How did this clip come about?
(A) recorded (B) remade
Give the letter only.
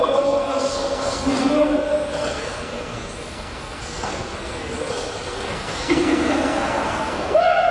B